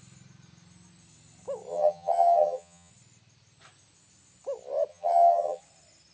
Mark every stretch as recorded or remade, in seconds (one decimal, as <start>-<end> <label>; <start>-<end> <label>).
0.0-1.7 recorded; 1.7-2.9 remade; 2.9-4.9 recorded; 4.9-5.6 remade; 5.6-6.1 recorded